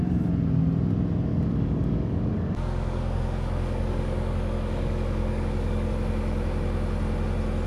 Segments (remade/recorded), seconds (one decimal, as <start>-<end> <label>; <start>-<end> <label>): 0.0-1.3 recorded; 1.3-5.9 remade; 5.9-7.7 recorded